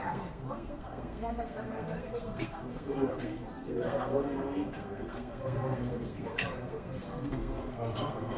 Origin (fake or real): fake